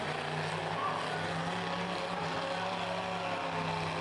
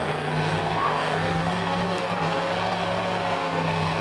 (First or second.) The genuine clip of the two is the first